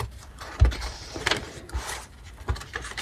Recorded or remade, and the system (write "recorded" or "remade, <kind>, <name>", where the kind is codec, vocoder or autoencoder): remade, vocoder, BigVGAN v2